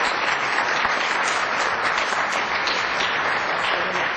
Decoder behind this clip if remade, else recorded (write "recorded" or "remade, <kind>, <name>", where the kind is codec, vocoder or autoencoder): recorded